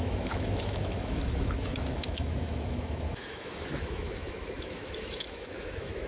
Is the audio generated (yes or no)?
yes